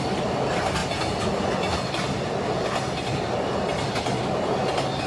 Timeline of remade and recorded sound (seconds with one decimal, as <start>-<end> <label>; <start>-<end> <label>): 0.0-5.1 recorded